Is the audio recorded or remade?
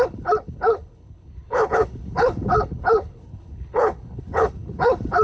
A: remade